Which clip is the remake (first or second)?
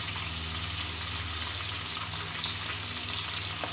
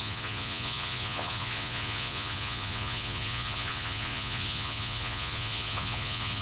second